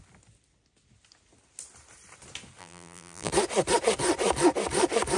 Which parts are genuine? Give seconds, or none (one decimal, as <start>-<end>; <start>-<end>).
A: 0.0-2.6; 3.3-5.2